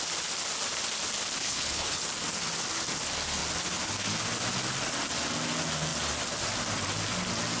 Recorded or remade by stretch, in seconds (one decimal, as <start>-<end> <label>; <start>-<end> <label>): 0.0-1.4 recorded; 1.4-2.0 remade; 2.0-7.6 recorded